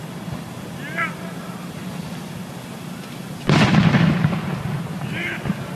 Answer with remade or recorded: recorded